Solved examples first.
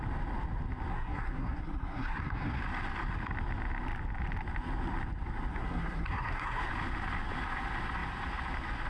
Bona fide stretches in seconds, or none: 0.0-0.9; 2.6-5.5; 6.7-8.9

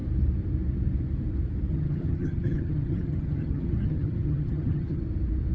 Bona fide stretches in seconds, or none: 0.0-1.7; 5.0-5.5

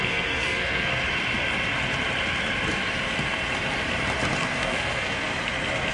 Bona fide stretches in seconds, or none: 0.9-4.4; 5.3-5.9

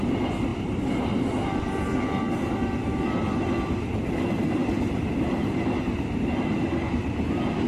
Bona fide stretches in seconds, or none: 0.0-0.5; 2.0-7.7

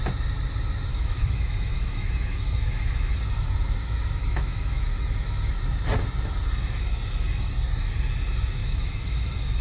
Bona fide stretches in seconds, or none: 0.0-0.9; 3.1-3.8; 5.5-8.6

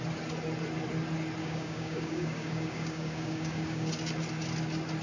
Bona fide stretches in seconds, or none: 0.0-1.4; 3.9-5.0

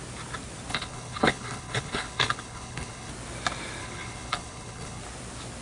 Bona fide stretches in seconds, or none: 0.0-0.7; 3.1-3.8; 5.0-5.6

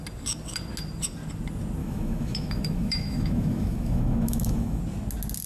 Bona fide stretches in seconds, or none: 0.0-1.8; 4.8-5.5